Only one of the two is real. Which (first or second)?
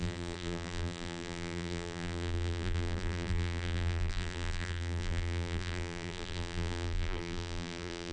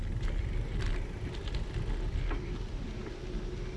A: second